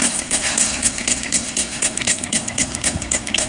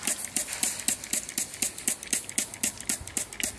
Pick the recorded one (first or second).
second